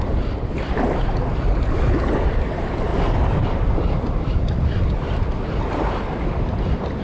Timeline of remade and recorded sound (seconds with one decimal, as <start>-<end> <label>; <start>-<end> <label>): 0.0-7.0 recorded